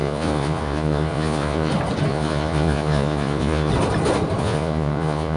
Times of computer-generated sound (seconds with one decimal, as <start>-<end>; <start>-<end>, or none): 0.0-1.7; 2.1-3.7; 4.4-5.4

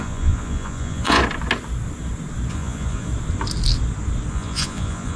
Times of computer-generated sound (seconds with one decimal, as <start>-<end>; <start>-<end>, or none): 0.0-1.2; 2.5-3.1; 4.3-5.2

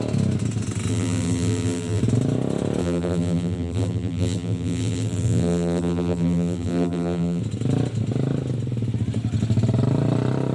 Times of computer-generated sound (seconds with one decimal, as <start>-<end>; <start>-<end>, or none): 0.9-2.0; 2.8-7.4

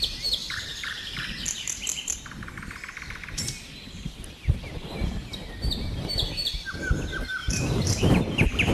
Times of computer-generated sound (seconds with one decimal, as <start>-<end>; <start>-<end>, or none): 0.4-2.2; 7.4-8.1

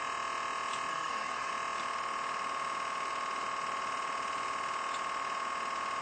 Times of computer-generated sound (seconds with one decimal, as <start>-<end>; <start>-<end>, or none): 0.9-1.5